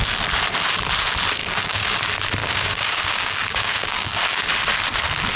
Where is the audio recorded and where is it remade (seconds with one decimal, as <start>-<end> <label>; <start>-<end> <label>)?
0.0-1.4 recorded; 1.4-2.0 remade; 2.0-2.4 recorded; 2.4-4.5 remade; 4.5-5.4 recorded